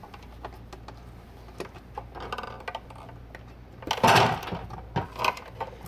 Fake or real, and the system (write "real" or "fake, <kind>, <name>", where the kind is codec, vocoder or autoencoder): real